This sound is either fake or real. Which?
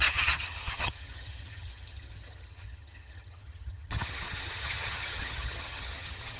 fake